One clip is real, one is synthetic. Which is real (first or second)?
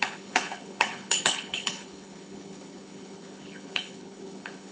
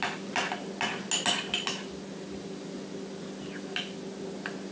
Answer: second